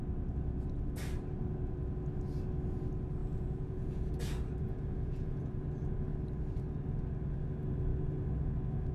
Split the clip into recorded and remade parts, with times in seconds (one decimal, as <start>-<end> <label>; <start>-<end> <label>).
0.0-3.2 recorded; 3.2-4.1 remade; 4.1-4.6 recorded; 4.6-5.4 remade; 5.4-8.9 recorded